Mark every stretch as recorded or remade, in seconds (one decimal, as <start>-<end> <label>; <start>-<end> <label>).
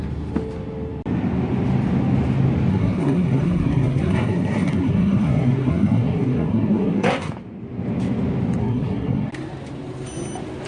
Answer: 0.0-2.7 recorded; 2.7-7.3 remade; 7.3-8.6 recorded; 8.6-9.3 remade; 9.3-10.7 recorded